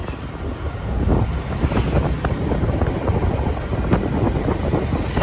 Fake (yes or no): no